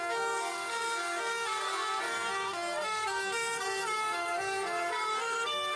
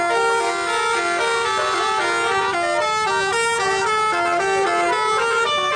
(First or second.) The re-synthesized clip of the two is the first